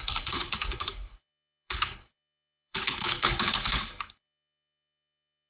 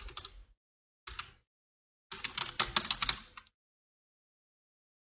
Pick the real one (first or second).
second